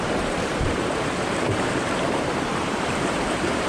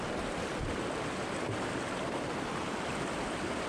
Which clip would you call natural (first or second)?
second